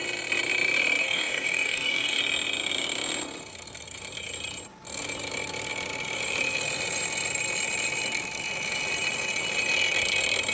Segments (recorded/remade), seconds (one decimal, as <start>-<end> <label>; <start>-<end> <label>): 0.0-1.0 recorded; 1.0-2.2 remade; 2.2-10.5 recorded